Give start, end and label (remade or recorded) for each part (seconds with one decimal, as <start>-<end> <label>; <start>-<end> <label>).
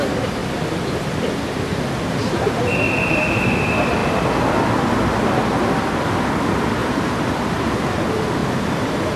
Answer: 0.0-6.8 recorded; 6.8-8.0 remade; 8.0-8.4 recorded; 8.4-9.2 remade